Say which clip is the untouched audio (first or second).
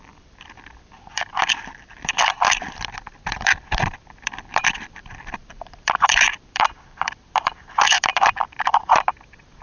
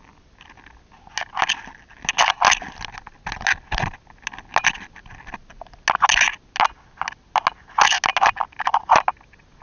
second